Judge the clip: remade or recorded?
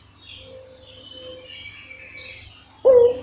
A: recorded